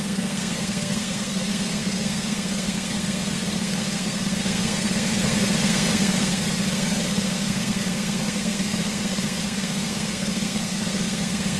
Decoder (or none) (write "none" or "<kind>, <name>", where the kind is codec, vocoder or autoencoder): codec, SNAC